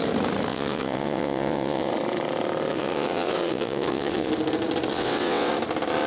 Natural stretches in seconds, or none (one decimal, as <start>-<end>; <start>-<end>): 0.0-0.5; 1.9-2.7; 4.3-4.9; 5.5-6.1